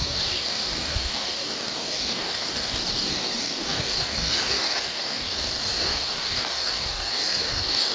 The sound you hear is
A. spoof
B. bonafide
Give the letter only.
A